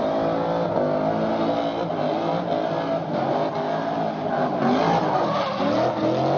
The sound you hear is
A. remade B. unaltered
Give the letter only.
B